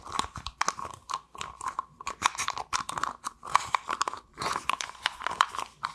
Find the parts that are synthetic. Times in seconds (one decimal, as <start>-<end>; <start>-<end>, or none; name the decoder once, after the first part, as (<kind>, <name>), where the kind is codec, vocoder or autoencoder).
4.3-5.5 (vocoder, Vocos)